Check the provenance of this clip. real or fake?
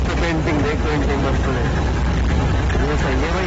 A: real